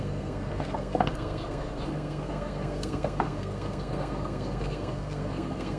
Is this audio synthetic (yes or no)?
yes